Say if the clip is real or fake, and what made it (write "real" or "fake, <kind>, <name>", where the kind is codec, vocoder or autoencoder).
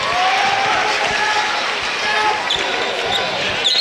real